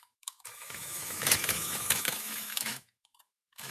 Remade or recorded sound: remade